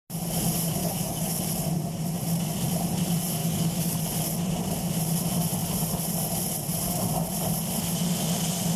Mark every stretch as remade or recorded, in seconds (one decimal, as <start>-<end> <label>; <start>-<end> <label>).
0.0-0.8 recorded; 0.8-1.3 remade; 1.3-3.4 recorded; 3.4-4.0 remade; 4.0-8.8 recorded